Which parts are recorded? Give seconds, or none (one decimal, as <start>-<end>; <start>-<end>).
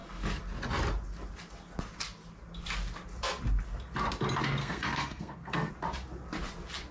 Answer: 0.0-4.6; 5.7-6.9